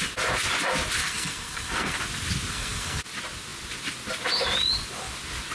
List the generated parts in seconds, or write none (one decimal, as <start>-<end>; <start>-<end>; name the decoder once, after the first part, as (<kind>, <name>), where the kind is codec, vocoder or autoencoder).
1.0-2.0 (codec, SNAC); 2.5-3.0